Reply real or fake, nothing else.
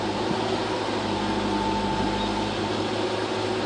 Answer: real